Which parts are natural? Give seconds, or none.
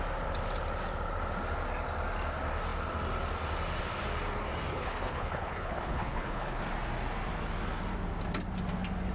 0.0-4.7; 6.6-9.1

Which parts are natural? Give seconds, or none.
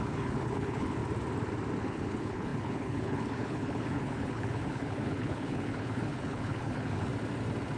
1.0-1.8; 7.1-7.8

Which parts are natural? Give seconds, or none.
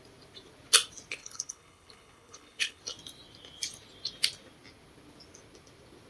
0.0-1.2; 2.8-6.1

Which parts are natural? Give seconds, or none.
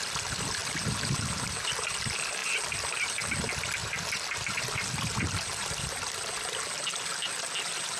0.0-8.0